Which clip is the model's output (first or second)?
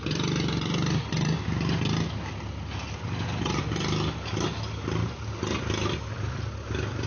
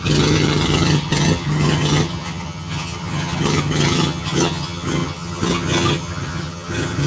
second